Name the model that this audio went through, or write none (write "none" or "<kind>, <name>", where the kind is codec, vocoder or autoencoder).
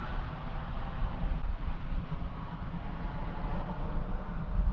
none